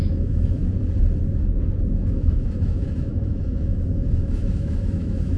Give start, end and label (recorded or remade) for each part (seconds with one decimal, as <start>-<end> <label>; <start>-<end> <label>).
0.0-0.6 remade; 0.6-2.0 recorded; 2.0-5.4 remade